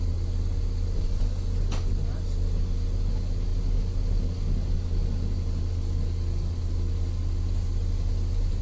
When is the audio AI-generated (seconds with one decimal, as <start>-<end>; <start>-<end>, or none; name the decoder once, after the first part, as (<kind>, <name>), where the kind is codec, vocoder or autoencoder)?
none